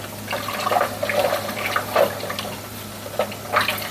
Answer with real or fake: real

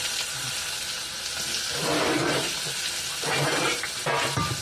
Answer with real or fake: real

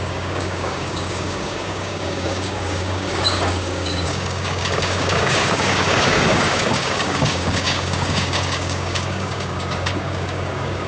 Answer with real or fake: fake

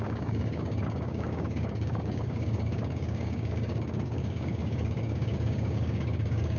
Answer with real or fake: fake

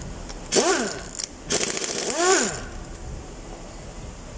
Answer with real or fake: real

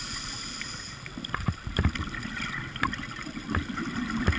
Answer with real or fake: real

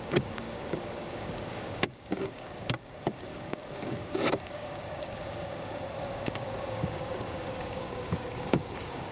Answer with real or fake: fake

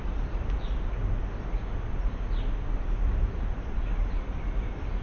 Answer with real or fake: real